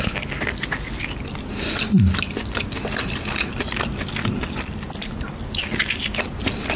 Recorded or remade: recorded